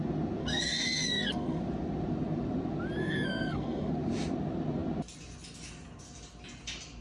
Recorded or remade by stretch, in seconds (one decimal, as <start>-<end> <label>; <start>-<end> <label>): 0.0-0.4 recorded; 0.4-1.6 remade; 1.6-3.0 recorded; 3.0-3.9 remade; 3.9-7.0 recorded